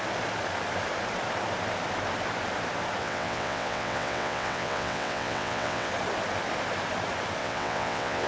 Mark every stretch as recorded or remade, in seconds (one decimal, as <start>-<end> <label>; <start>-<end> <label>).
0.0-3.0 recorded; 3.0-5.9 remade; 5.9-7.4 recorded; 7.4-8.3 remade